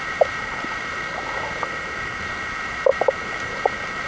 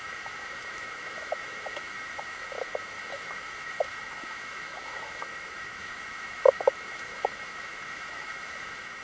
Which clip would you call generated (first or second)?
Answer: second